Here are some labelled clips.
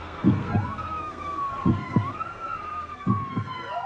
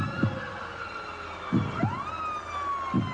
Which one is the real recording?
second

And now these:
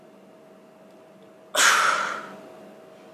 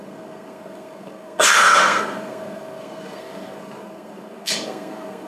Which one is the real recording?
first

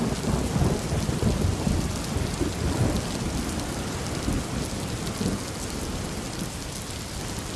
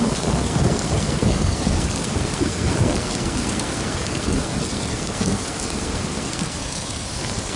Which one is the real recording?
first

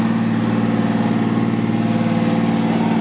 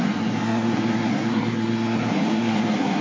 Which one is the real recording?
first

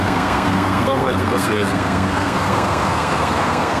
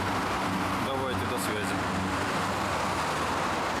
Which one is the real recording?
second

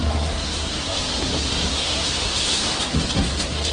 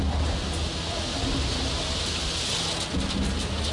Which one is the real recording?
second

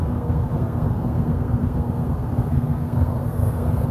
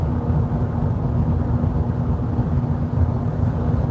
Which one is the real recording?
second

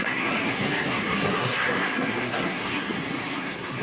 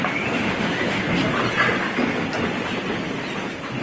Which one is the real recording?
second